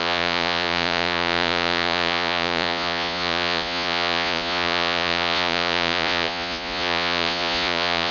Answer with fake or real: fake